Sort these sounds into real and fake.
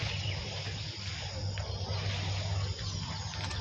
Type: real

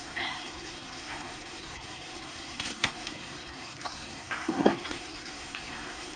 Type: fake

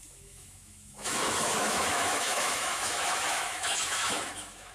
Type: fake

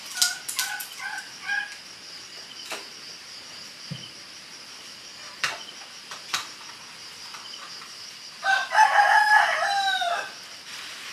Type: real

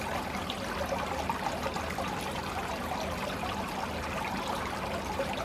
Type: real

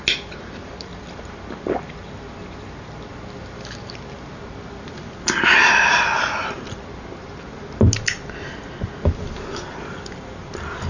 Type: real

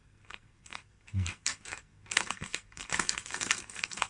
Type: fake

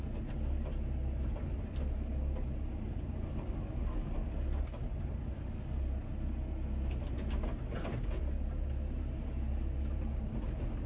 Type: real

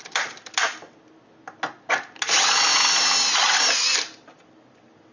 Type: real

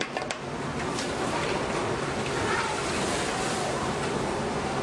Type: real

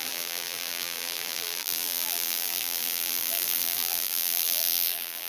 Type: fake